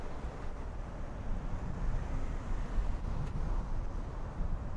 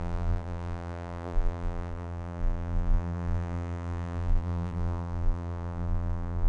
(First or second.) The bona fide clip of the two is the first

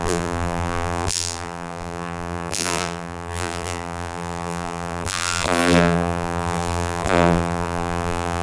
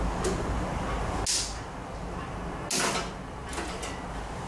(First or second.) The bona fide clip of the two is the second